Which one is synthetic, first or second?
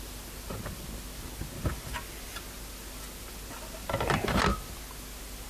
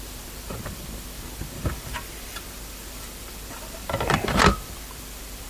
second